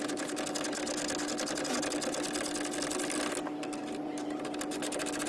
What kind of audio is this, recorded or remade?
recorded